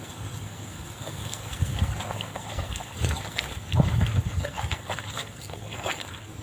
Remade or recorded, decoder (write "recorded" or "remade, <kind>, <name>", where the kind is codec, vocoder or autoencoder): remade, codec, SNAC